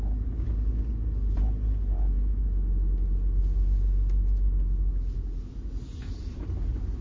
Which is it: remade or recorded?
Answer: recorded